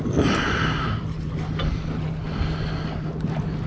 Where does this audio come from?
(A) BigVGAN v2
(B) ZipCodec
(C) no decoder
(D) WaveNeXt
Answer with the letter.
C